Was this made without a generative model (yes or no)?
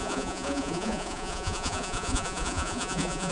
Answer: no